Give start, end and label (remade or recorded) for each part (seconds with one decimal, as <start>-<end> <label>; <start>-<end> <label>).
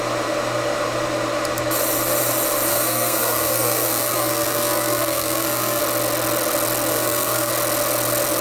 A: 0.0-2.7 recorded; 2.7-5.8 remade; 5.8-6.9 recorded; 6.9-7.5 remade; 7.5-8.4 recorded